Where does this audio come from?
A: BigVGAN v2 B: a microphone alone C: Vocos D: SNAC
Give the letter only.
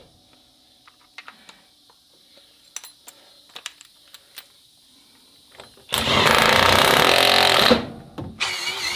B